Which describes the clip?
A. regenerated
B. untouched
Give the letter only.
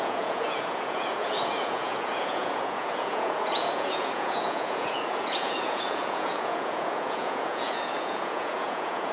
A